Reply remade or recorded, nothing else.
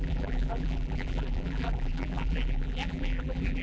remade